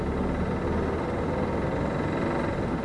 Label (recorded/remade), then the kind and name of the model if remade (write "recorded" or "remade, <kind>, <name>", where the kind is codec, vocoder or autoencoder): recorded